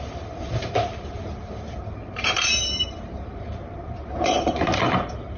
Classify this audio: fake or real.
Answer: fake